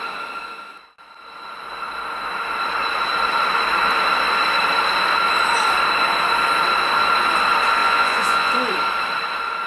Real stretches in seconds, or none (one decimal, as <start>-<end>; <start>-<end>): 0.0-7.8; 8.5-9.7